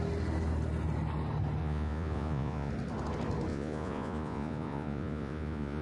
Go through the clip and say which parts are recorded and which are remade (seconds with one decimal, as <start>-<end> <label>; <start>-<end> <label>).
0.0-1.6 recorded; 1.6-2.7 remade; 2.7-3.5 recorded; 3.5-5.8 remade